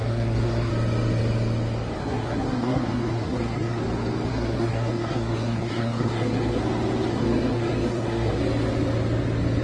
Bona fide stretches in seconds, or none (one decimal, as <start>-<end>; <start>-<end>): 0.7-2.0; 3.8-4.3; 6.6-7.1; 8.4-9.6